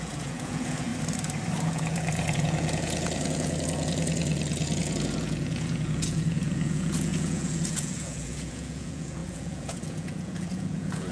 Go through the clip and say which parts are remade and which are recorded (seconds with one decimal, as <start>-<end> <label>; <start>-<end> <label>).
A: 0.0-0.9 remade; 0.9-1.7 recorded; 1.7-11.1 remade